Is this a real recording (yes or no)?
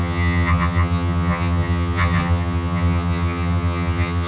no